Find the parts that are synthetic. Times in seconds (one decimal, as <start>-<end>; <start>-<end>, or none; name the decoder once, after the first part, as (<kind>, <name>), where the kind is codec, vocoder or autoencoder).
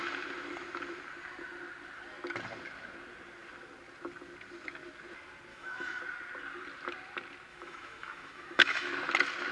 5.5-6.0 (autoencoder, DAC-VAE); 7.5-8.9